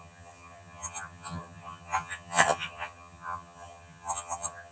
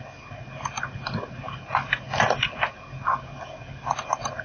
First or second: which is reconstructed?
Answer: first